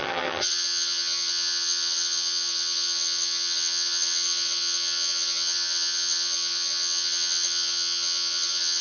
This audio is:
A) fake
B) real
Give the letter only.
A